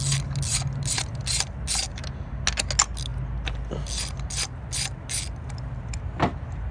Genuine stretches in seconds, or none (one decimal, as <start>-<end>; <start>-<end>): 0.0-6.7